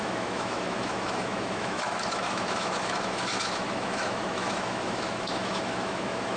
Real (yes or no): no